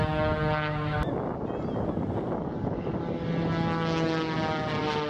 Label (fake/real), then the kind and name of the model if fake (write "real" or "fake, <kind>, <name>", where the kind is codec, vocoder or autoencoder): real